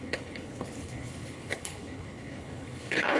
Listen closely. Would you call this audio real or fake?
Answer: fake